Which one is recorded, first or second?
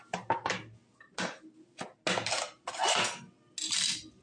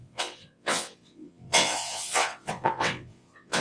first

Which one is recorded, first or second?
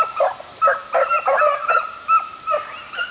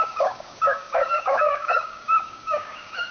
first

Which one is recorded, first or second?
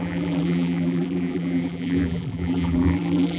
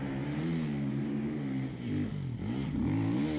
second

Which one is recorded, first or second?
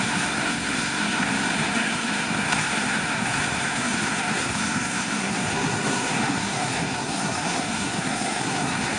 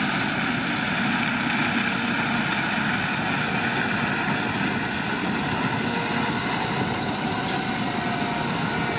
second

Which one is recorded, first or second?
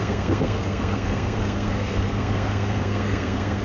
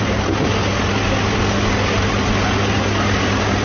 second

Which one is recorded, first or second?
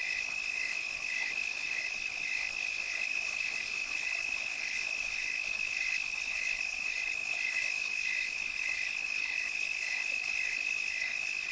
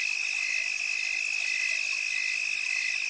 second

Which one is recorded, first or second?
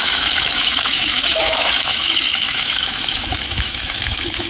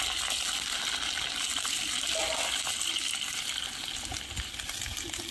second